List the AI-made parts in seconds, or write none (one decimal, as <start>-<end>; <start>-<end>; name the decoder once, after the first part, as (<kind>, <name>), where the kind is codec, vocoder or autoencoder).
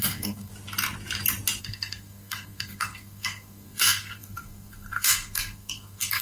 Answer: 0.0-0.5 (codec, SNAC); 1.6-6.2